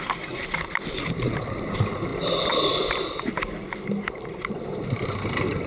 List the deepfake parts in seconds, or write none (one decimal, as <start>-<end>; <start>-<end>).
none